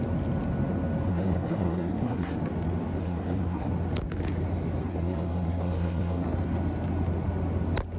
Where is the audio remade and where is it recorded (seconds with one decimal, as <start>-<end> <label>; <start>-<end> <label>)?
0.0-1.1 recorded; 1.1-2.4 remade; 2.4-3.0 recorded; 3.0-3.7 remade; 3.7-4.9 recorded; 4.9-6.3 remade; 6.3-8.0 recorded